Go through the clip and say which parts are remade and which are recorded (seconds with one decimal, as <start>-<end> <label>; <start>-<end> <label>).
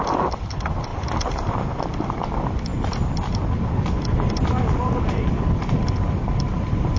0.0-7.0 recorded